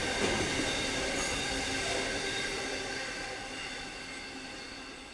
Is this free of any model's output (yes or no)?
yes